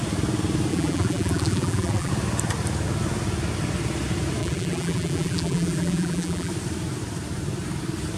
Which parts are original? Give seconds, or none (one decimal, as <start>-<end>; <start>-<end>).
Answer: 0.0-0.7; 2.1-4.4; 6.5-8.2